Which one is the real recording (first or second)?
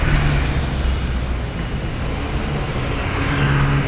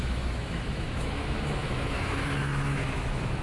first